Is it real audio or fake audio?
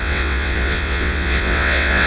fake